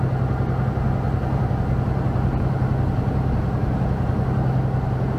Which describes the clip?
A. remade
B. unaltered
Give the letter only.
B